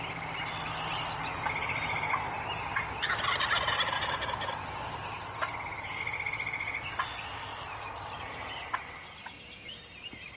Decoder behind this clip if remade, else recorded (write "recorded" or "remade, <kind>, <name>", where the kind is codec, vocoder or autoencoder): recorded